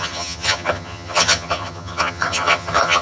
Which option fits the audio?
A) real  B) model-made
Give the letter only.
B